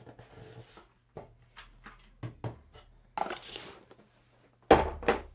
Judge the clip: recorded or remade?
recorded